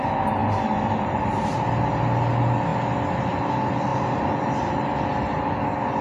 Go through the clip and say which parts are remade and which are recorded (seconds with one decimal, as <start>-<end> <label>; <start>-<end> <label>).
0.0-6.0 recorded